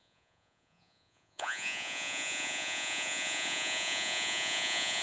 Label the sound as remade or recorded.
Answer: remade